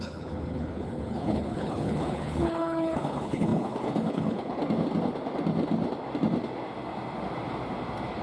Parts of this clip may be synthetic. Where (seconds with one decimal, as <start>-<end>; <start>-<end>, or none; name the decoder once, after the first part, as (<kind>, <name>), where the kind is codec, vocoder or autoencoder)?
0.0-4.6 (codec, HILCodec)